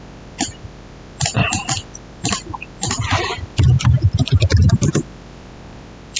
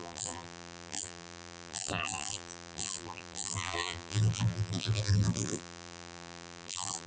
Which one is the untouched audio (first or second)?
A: first